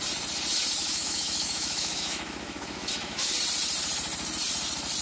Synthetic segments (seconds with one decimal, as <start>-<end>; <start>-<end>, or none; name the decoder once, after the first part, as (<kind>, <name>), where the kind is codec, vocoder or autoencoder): 0.8-3.3 (autoencoder, DAC-VAE)